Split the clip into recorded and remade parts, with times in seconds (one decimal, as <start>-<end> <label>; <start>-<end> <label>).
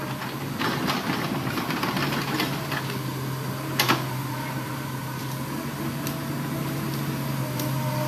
0.0-4.2 recorded; 4.2-5.2 remade; 5.2-8.1 recorded